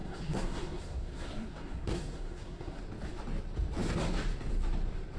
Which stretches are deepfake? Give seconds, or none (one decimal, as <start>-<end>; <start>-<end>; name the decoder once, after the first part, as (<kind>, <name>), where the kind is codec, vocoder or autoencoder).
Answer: 0.0-2.8 (codec, SNAC)